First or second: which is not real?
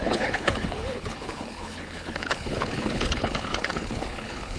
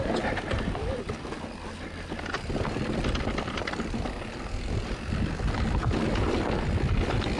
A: first